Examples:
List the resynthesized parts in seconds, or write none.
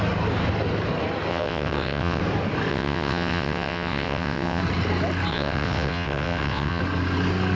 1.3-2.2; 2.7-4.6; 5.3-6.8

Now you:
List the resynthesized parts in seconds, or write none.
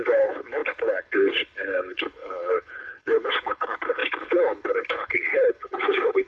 0.0-6.3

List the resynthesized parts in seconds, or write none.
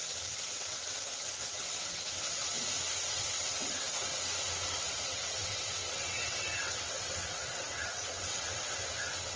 0.0-2.6; 3.1-4.1; 4.8-9.4